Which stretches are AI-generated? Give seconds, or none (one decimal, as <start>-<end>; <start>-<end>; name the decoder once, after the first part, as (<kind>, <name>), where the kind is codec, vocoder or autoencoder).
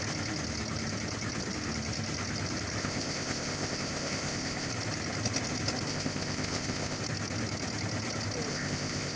2.8-4.7 (codec, ZipCodec); 5.9-7.0; 8.5-9.2